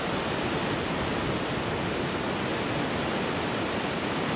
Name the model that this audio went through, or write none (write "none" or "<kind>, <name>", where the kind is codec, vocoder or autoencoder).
none